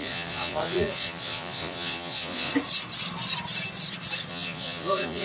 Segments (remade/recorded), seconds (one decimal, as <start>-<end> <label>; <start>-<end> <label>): 0.0-2.5 remade; 2.5-4.3 recorded; 4.3-5.2 remade